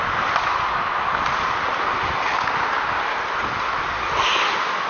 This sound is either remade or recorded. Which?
recorded